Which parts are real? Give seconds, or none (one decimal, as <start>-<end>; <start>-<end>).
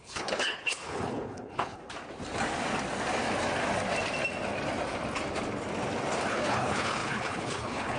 1.8-6.3